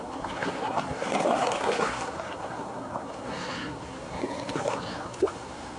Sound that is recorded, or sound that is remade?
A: remade